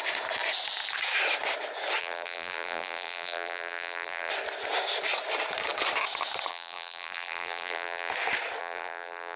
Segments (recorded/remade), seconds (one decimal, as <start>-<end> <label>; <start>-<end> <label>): 0.0-2.0 recorded; 2.0-4.3 remade; 4.3-6.5 recorded; 6.5-8.1 remade; 8.1-8.6 recorded; 8.6-9.4 remade